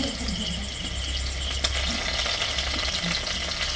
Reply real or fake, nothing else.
real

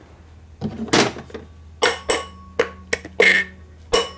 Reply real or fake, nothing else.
real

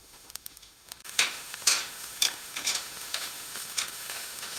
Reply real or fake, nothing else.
fake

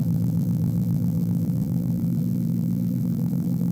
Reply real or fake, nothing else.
fake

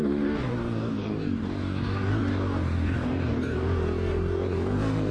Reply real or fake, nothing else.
fake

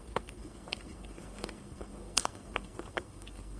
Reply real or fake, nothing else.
fake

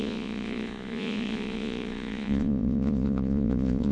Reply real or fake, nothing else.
fake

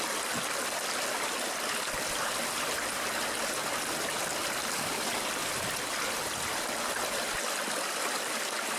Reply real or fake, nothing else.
real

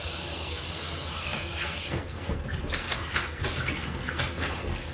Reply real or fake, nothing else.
fake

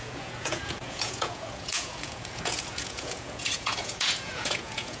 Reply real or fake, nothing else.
fake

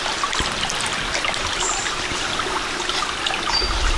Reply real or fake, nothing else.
real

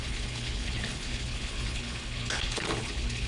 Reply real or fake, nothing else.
fake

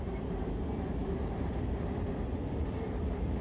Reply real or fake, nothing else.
fake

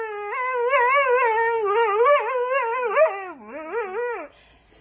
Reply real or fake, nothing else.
real